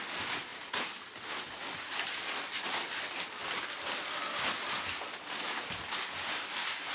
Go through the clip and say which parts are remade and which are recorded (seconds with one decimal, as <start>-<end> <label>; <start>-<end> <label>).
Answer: 0.0-6.9 recorded